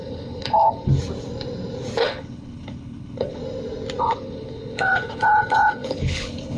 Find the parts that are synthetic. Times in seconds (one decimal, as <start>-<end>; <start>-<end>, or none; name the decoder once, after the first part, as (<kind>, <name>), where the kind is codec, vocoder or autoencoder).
0.0-0.9 (codec, HILCodec); 2.0-3.4; 4.0-6.6